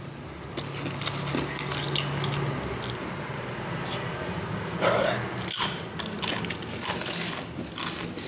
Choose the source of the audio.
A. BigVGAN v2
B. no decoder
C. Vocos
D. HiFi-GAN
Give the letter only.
B